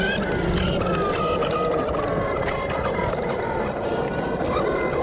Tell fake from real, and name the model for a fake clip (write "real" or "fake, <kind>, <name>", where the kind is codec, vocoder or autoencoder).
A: real